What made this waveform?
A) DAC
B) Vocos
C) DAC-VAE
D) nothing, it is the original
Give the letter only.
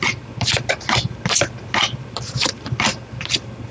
D